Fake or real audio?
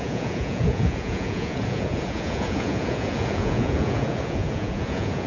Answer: fake